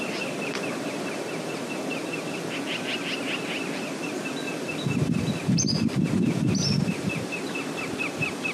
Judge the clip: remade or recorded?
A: recorded